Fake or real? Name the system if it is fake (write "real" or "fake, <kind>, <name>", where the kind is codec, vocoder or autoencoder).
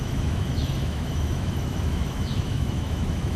fake, autoencoder, DAC-VAE